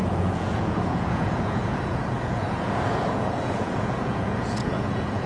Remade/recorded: remade